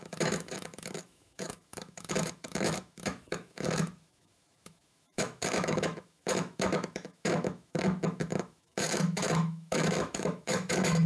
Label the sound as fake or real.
fake